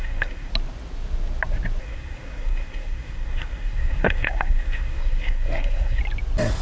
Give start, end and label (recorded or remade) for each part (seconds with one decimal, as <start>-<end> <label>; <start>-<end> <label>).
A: 0.0-0.5 remade; 0.5-1.8 recorded; 1.8-6.0 remade; 6.0-6.6 recorded